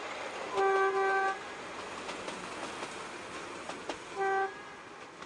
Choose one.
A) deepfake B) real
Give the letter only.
B